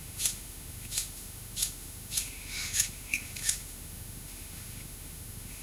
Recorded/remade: remade